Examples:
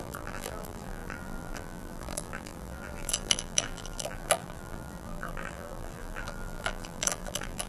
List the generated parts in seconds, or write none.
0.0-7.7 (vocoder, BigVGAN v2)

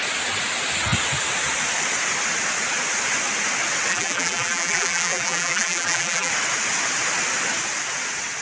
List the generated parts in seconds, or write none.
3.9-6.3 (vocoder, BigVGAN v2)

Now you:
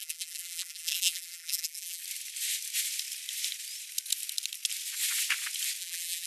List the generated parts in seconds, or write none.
0.0-2.0 (vocoder, BigVGAN v2); 5.8-6.3